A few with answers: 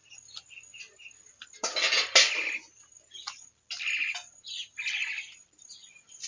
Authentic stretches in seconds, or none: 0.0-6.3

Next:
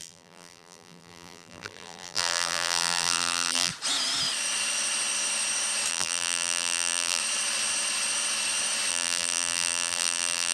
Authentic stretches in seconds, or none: 3.7-5.9; 7.2-8.9

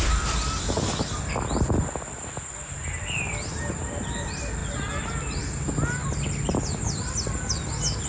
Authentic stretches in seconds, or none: 0.0-8.1